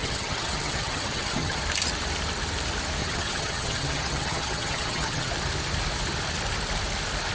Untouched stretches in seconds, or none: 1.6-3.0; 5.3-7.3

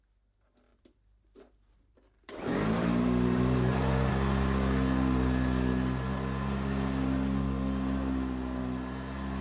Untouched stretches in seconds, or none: 0.0-0.7; 4.1-9.4